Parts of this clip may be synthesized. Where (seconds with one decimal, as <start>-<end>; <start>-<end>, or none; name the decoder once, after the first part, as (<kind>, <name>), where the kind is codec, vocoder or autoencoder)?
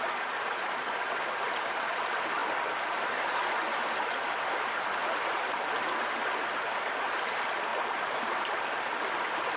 7.7-8.5 (vocoder, BigVGAN v2)